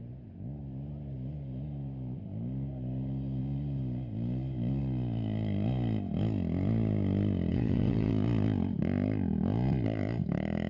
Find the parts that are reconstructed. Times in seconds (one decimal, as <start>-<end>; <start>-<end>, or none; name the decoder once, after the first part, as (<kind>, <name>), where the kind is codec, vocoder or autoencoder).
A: 7.5-8.1 (vocoder, WaveNeXt)